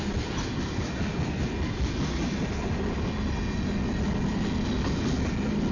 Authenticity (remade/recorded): recorded